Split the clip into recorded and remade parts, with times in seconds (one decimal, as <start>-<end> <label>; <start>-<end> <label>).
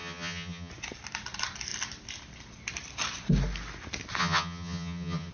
0.0-0.7 remade; 0.7-4.2 recorded; 4.2-5.3 remade